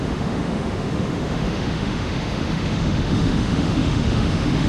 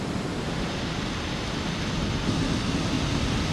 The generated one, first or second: first